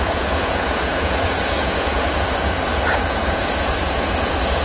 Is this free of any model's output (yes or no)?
no